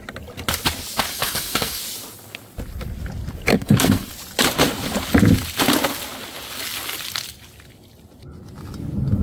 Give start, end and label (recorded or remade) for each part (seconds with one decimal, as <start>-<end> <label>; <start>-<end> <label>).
0.0-1.1 recorded; 1.1-1.8 remade; 1.8-3.5 recorded; 3.5-4.1 remade; 4.1-9.2 recorded